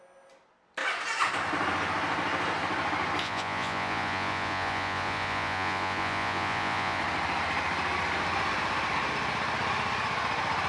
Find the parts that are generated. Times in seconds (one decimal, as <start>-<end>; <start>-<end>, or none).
3.2-7.0